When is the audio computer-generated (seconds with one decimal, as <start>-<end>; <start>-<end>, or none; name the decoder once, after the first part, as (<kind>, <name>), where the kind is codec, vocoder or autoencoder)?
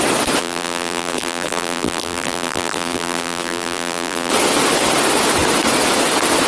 0.4-4.3 (vocoder, BigVGAN v2)